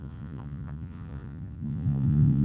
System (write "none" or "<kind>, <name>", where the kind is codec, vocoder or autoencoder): vocoder, Vocos